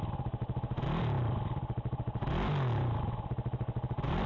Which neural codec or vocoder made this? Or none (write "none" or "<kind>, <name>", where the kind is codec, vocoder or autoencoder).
none